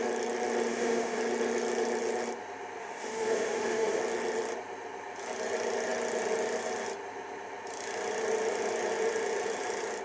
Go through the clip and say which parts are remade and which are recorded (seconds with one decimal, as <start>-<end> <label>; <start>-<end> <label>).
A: 0.0-0.7 recorded; 0.7-1.2 remade; 1.2-2.8 recorded; 2.8-4.0 remade; 4.0-10.0 recorded